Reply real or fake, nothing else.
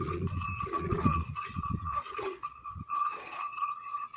fake